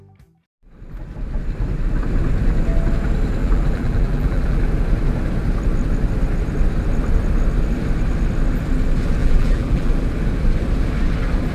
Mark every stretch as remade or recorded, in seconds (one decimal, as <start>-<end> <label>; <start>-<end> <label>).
0.0-3.4 recorded; 3.4-4.6 remade; 4.6-9.2 recorded; 9.2-9.9 remade; 9.9-11.5 recorded